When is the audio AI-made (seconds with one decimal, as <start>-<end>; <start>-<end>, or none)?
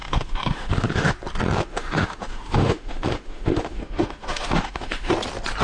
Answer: 0.0-1.1; 1.7-5.1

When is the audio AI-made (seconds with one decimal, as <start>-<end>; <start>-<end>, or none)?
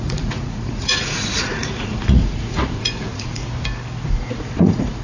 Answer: 0.0-3.4; 4.1-5.0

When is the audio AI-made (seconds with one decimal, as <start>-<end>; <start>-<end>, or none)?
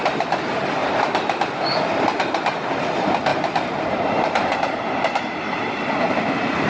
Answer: 3.3-5.4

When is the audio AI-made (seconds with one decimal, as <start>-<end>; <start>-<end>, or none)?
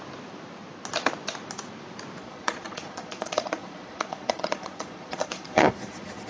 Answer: 2.2-6.3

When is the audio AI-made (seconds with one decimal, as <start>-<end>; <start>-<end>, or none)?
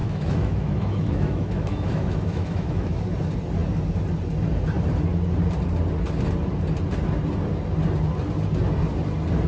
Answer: 0.0-3.0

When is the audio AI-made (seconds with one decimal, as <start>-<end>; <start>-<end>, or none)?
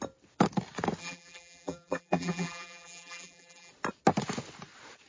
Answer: 1.0-3.7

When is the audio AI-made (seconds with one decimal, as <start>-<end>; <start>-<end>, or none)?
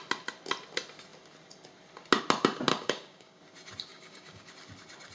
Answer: 2.7-3.4; 3.9-4.5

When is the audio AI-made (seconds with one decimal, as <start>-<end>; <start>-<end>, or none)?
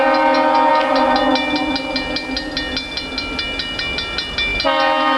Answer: none